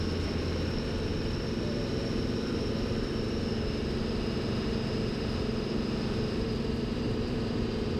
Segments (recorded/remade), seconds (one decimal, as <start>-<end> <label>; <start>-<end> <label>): 0.0-8.0 recorded